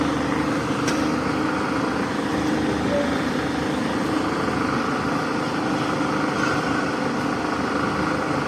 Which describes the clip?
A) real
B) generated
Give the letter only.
A